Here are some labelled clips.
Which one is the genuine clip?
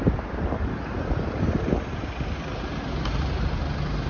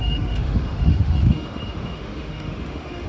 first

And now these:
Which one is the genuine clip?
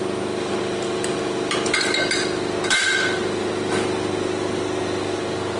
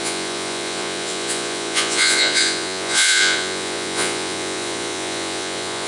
first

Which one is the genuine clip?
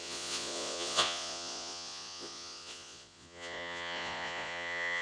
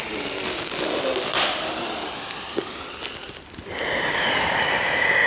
second